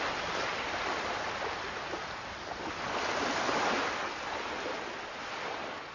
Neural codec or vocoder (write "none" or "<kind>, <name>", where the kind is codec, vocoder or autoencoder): none